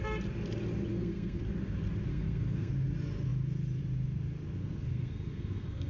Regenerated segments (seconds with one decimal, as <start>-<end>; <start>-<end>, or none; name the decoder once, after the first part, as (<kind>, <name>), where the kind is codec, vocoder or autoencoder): 0.9-1.4 (codec, SNAC); 2.1-2.7; 4.6-5.9